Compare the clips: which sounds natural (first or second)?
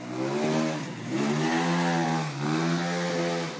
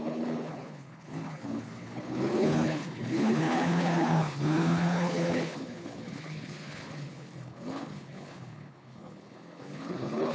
first